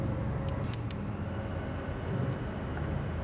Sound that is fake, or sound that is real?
real